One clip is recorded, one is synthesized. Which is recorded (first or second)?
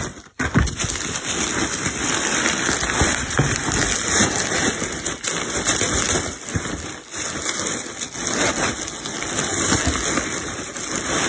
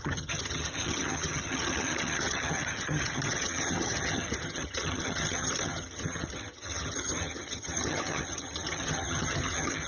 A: first